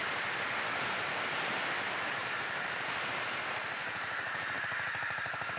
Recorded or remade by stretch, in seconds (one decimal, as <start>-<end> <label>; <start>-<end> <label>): 0.0-2.2 recorded; 2.2-3.1 remade; 3.1-3.8 recorded; 3.8-4.6 remade; 4.6-5.6 recorded